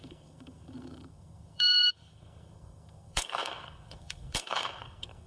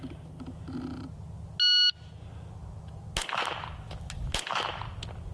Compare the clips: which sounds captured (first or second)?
second